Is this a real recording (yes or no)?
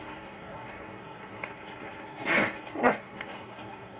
no